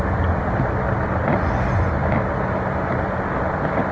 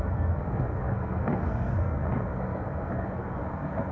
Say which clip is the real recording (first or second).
first